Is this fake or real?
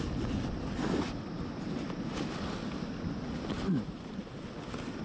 real